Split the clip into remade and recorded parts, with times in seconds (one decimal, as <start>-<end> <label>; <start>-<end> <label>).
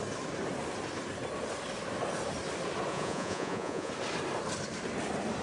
0.0-2.9 recorded; 2.9-3.9 remade; 3.9-5.4 recorded